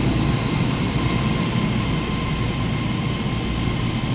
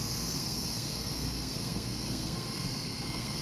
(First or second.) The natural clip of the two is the first